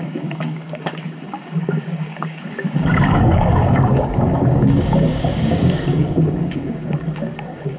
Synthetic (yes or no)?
yes